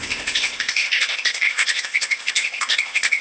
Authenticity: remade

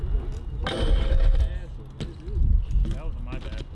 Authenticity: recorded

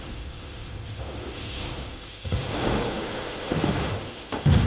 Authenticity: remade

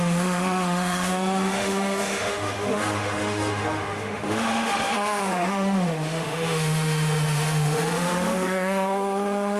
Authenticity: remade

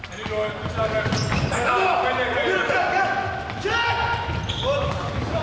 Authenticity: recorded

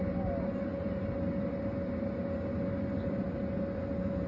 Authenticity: recorded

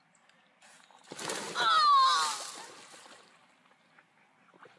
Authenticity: recorded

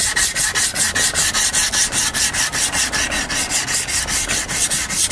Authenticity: recorded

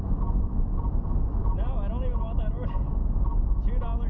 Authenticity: recorded